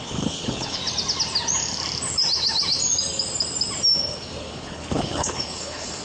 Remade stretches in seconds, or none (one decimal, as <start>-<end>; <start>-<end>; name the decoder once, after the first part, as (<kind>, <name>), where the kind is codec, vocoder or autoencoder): 0.0-0.8 (codec, HILCodec); 4.4-6.0